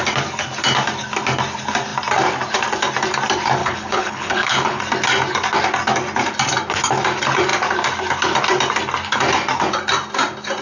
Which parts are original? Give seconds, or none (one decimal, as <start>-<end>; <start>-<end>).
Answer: 0.0-3.6; 4.8-10.6